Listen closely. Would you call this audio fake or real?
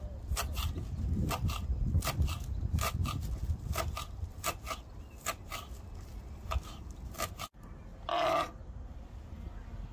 real